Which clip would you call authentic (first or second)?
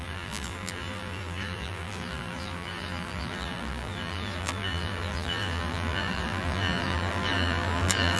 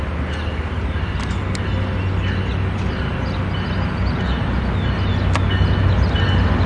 second